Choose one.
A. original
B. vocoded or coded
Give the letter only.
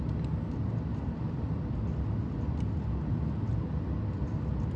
A